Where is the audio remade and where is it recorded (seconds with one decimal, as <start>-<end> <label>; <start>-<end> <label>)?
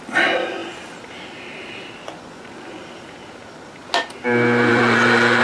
0.0-2.0 recorded; 2.0-2.8 remade; 2.8-4.7 recorded; 4.7-5.4 remade